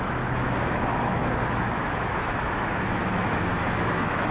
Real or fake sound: fake